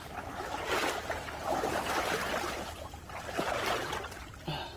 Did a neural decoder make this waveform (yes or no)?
no